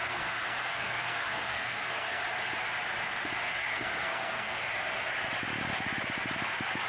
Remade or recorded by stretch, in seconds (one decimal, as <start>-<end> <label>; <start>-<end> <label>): 0.0-2.2 remade; 2.2-3.6 recorded; 3.6-4.6 remade; 4.6-6.9 recorded